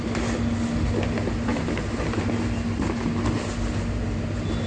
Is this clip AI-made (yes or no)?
no